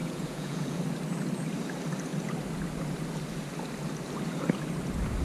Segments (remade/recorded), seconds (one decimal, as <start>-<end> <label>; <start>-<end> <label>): 0.0-0.8 remade; 0.8-5.2 recorded